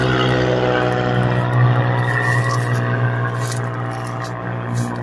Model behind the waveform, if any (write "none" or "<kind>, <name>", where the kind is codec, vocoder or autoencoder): none